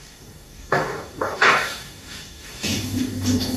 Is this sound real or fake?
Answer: fake